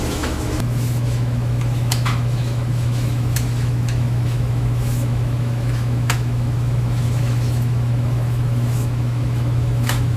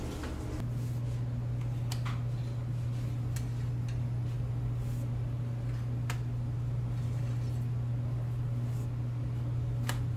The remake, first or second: first